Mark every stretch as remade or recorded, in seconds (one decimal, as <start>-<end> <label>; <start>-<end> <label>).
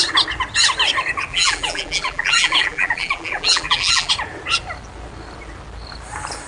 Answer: 0.0-1.3 recorded; 1.3-4.1 remade; 4.1-6.5 recorded